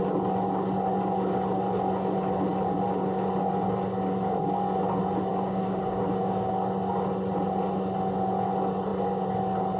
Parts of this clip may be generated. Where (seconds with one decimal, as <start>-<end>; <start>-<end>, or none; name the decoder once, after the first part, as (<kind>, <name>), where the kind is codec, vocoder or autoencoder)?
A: 5.3-6.5 (codec, DAC)